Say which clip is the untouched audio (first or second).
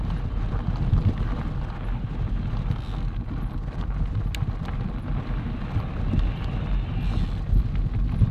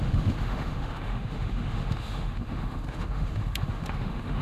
first